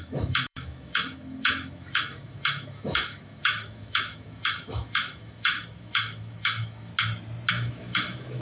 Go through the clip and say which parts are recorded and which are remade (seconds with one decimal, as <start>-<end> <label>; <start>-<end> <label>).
0.0-6.9 remade; 6.9-7.5 recorded; 7.5-8.4 remade